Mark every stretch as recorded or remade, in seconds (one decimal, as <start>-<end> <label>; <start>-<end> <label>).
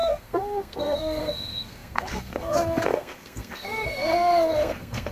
0.0-5.1 remade